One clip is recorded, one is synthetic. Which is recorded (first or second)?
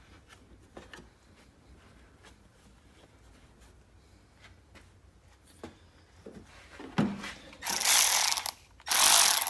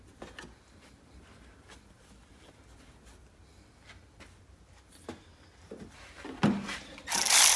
first